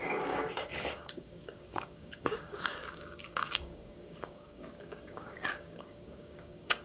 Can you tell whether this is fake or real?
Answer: fake